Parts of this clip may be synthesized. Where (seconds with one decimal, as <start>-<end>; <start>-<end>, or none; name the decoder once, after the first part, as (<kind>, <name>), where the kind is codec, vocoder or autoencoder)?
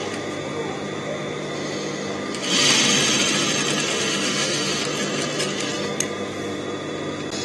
3.9-4.8 (autoencoder, DAC-VAE)